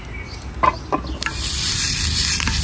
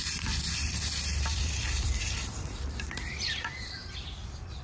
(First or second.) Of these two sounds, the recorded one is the first